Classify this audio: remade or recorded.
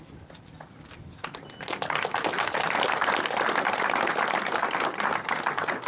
recorded